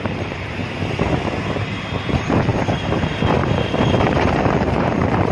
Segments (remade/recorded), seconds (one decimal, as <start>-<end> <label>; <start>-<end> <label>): 0.0-0.6 remade; 0.6-1.6 recorded; 1.6-3.4 remade; 3.4-4.0 recorded; 4.0-5.3 remade